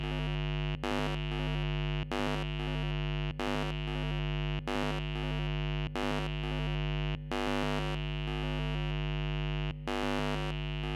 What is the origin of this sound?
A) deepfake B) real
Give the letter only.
B